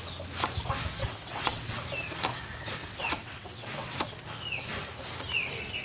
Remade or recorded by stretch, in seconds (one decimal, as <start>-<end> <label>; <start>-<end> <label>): 0.0-1.0 recorded; 1.0-1.8 remade; 1.8-2.8 recorded; 2.8-4.1 remade; 4.1-5.8 recorded